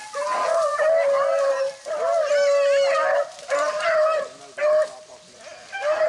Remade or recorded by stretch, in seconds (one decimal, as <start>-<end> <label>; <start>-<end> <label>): 0.0-6.1 recorded